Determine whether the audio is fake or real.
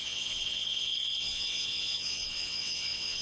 fake